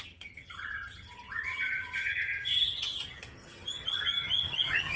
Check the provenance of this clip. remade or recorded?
remade